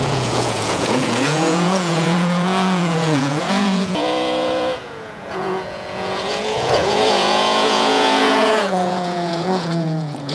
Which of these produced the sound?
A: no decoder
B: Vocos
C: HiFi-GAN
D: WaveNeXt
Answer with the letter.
B